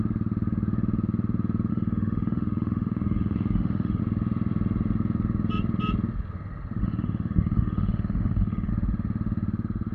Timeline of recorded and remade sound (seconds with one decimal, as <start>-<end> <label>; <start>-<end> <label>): 0.0-1.7 recorded; 1.7-4.0 remade; 4.0-6.8 recorded; 6.8-8.7 remade; 8.7-9.9 recorded